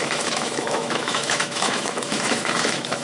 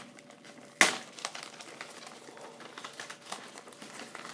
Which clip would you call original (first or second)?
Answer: second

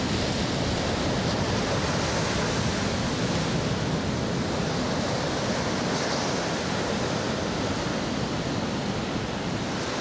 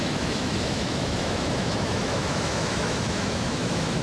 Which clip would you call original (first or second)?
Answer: first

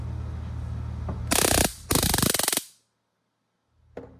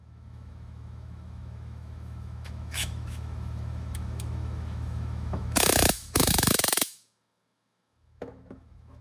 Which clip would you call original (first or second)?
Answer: first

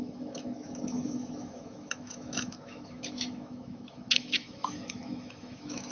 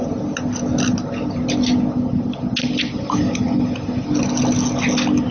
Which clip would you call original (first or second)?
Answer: second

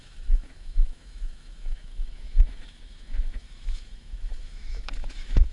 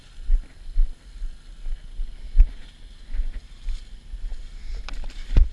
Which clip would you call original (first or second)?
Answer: second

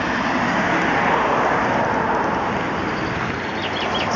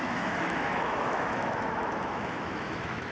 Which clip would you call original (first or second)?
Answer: first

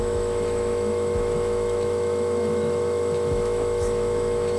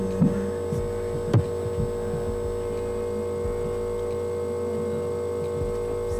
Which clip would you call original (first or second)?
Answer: second